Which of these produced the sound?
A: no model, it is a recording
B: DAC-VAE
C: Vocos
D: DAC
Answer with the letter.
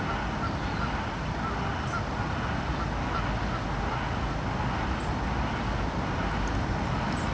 A